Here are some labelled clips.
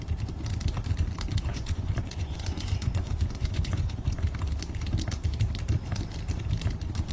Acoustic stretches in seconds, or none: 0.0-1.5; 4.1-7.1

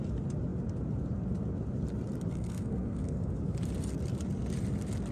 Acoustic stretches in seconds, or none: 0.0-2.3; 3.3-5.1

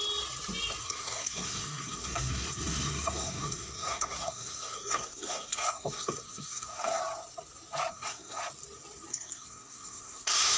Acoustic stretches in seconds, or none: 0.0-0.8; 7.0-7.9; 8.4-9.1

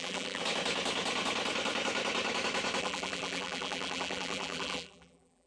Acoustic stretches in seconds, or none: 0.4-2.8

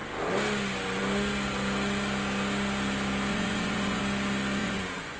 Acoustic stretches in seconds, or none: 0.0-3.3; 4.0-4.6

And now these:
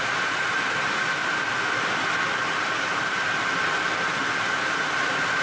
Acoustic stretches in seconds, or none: 0.0-5.4

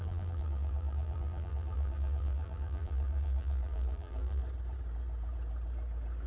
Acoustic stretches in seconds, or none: 4.4-6.3